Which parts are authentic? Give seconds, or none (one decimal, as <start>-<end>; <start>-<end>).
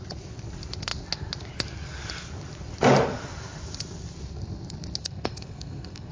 0.0-5.0